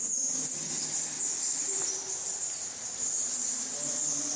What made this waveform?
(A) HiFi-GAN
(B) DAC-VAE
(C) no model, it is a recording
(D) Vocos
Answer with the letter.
C